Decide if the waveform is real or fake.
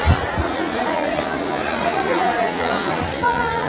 fake